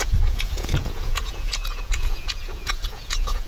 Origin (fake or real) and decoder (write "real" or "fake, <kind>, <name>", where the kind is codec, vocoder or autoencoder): fake, vocoder, Vocos